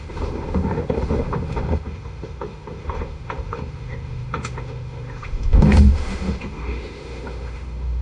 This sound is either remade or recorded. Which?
remade